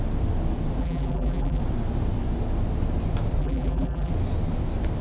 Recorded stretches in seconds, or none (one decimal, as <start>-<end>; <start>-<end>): 0.0-0.8; 1.6-3.4; 4.1-5.0